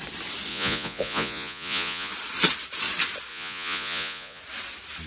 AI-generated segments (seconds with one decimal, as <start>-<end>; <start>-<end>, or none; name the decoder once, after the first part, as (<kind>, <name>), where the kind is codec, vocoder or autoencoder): 0.5-2.1 (vocoder, Vocos); 3.3-4.4